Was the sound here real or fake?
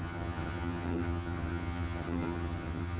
fake